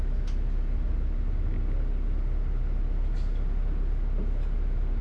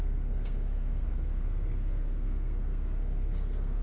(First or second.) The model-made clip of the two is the second